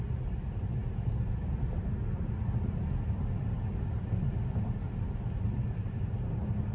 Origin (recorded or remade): recorded